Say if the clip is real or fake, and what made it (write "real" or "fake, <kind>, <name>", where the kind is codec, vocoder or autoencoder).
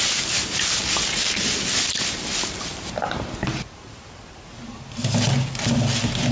real